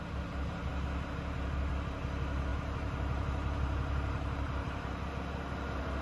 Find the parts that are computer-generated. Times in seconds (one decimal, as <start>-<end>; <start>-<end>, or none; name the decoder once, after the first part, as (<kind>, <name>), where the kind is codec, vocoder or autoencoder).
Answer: 2.5-5.1 (vocoder, BigVGAN v2)